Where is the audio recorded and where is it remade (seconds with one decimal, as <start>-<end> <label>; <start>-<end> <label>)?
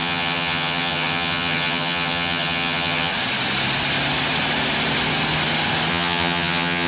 0.0-3.1 remade; 3.1-5.9 recorded; 5.9-6.9 remade